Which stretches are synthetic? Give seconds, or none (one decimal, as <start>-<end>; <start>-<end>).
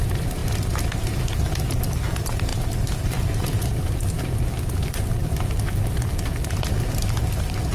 none